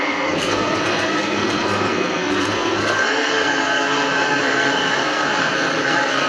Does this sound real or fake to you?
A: fake